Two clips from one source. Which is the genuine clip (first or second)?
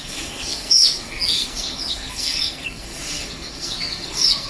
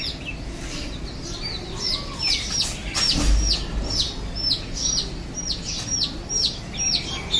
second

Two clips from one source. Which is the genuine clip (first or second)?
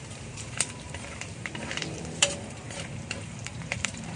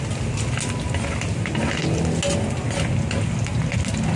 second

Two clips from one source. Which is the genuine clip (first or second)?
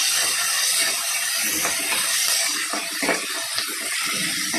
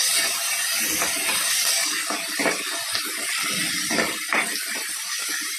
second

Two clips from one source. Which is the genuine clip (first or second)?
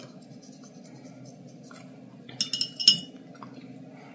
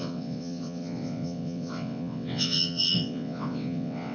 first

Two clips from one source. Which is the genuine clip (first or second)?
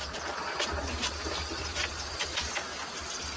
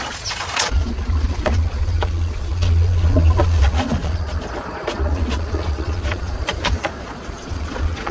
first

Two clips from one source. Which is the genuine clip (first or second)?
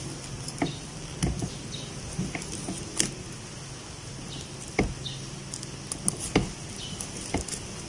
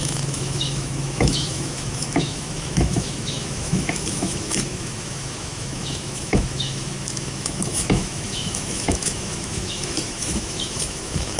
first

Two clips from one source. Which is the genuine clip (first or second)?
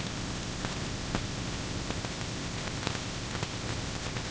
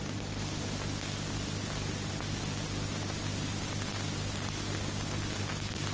second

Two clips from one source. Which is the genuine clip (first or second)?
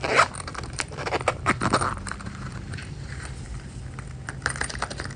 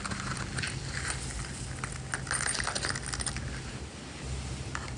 second